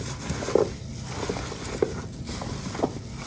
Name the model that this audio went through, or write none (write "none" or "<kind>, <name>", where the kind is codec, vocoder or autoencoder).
none